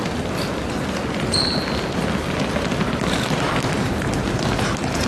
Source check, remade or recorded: recorded